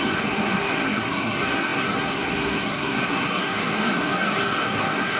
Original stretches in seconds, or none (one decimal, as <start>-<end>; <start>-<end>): none